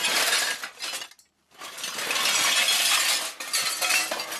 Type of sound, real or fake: real